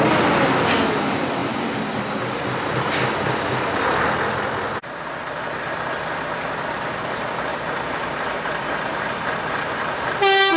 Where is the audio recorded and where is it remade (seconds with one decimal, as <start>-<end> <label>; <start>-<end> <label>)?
0.0-7.5 recorded; 7.5-8.4 remade; 8.4-8.9 recorded; 8.9-9.6 remade; 9.6-10.6 recorded